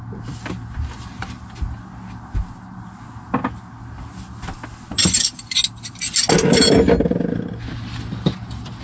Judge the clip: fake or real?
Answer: real